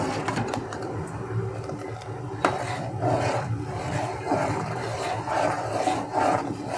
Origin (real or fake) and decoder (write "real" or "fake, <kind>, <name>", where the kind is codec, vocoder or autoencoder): fake, vocoder, BigVGAN v2